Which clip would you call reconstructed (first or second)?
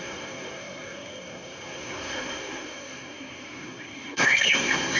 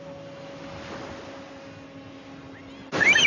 first